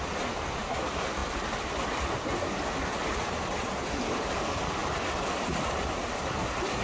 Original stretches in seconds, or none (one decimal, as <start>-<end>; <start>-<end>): 0.0-6.8